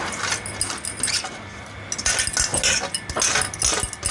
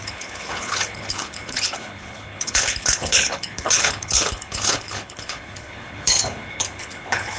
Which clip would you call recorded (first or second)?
first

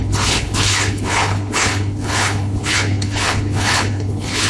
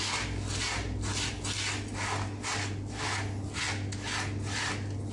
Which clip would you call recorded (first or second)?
second